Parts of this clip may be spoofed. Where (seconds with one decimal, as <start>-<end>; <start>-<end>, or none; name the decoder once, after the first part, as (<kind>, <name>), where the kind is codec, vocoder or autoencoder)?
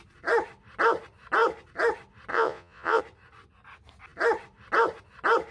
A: 2.3-3.0 (vocoder, Vocos)